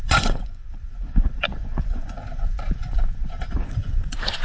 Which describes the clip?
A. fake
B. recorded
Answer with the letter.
A